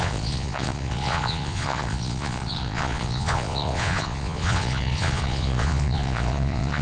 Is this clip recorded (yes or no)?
no